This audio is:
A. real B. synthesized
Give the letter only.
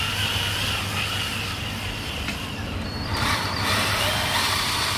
B